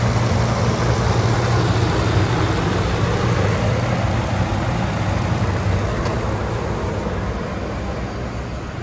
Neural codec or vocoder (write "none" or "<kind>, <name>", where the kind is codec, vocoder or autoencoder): none